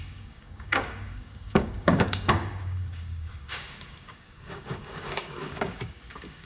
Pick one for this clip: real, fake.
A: fake